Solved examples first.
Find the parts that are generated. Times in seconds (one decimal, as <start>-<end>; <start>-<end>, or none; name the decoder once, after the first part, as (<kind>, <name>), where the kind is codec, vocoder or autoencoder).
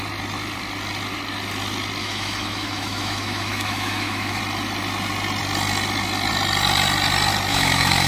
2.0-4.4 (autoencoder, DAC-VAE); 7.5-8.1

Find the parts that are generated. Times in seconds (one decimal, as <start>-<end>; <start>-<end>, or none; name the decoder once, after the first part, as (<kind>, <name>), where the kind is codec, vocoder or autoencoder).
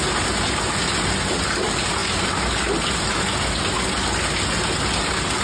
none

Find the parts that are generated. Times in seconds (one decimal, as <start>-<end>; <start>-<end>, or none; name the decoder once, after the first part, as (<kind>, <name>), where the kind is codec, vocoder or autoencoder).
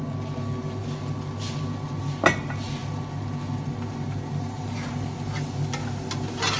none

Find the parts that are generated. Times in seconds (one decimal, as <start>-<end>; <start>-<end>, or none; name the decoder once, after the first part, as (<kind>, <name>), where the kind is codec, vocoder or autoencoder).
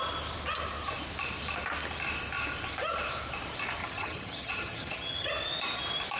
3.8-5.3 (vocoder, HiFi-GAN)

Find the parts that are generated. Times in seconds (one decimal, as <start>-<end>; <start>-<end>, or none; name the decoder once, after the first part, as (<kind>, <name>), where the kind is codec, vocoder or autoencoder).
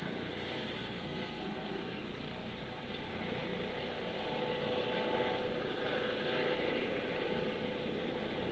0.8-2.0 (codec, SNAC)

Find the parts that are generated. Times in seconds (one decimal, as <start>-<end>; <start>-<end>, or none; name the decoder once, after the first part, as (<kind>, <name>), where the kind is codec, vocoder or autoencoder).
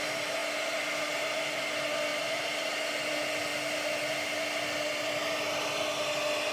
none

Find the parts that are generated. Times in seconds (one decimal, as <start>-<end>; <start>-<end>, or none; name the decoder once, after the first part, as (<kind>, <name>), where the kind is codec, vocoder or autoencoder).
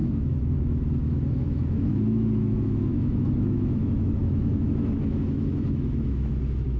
0.0-6.8 (autoencoder, DAC-VAE)